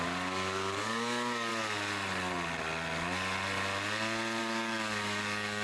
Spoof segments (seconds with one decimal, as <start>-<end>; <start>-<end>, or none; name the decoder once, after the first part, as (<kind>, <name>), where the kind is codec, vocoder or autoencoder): 0.0-1.5 (codec, DAC); 4.4-5.6